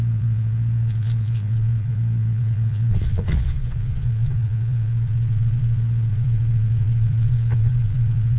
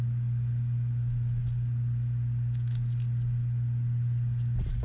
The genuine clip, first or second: second